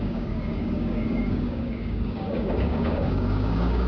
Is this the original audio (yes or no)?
no